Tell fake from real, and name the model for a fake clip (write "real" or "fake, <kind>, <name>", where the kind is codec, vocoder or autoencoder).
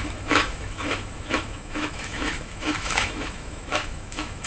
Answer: fake, autoencoder, DAC-VAE